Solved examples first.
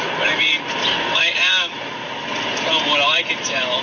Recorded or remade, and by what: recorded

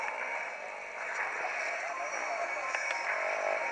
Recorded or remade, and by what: recorded